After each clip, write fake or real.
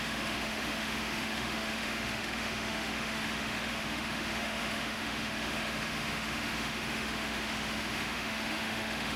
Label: fake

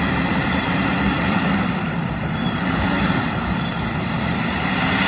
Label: fake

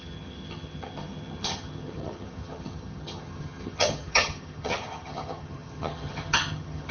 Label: fake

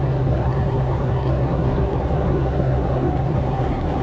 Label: fake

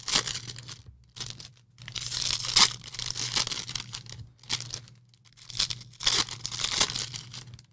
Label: real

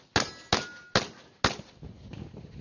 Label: real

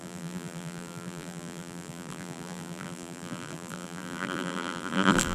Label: fake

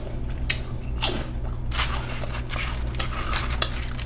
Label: real